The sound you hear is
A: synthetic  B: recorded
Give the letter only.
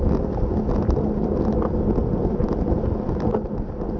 B